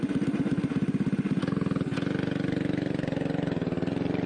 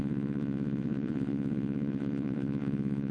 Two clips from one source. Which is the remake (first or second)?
second